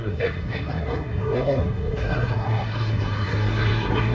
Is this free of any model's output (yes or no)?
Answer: no